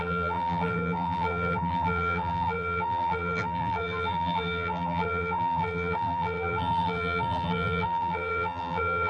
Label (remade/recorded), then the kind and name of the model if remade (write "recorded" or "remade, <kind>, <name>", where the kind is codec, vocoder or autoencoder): remade, vocoder, BigVGAN v2